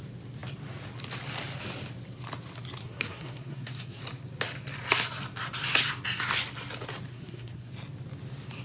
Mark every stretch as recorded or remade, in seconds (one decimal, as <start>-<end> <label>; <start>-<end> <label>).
0.0-2.8 recorded; 2.8-4.0 remade; 4.0-7.1 recorded; 7.1-7.7 remade; 7.7-8.6 recorded